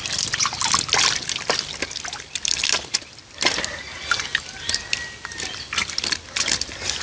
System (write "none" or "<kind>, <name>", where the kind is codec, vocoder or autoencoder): none